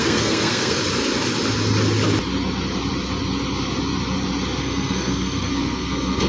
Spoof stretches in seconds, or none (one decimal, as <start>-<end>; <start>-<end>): 0.0-0.8; 4.6-6.3